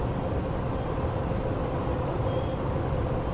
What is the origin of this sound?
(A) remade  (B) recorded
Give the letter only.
B